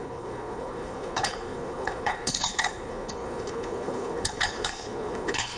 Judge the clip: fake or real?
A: fake